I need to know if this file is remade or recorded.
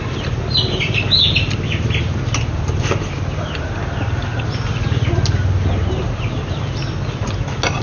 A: recorded